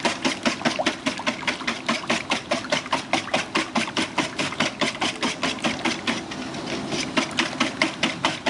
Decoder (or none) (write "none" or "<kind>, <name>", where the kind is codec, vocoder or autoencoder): none